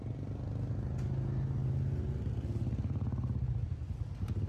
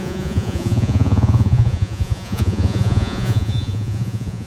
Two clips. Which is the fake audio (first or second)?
second